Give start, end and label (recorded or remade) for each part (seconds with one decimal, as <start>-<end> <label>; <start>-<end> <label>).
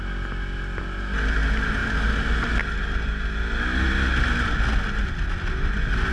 0.0-6.1 recorded